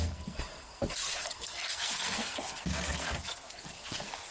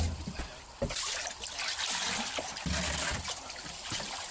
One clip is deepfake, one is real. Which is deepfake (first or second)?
first